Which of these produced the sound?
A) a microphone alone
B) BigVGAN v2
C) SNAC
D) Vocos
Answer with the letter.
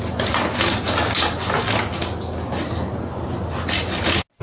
A